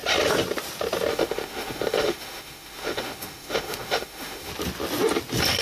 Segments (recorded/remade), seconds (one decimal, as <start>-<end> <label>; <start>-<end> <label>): 0.0-1.1 recorded; 1.1-4.5 remade; 4.5-5.6 recorded